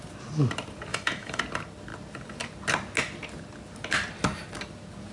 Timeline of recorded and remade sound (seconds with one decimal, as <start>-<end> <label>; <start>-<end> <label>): 0.0-0.9 recorded; 0.9-1.4 remade; 1.4-5.1 recorded